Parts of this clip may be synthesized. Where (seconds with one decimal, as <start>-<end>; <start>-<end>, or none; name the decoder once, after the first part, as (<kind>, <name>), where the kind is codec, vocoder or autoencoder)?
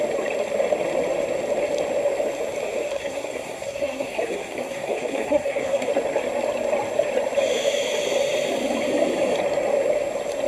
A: 2.9-5.9 (codec, SNAC)